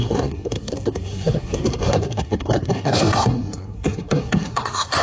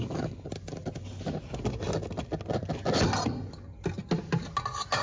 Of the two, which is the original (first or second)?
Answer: second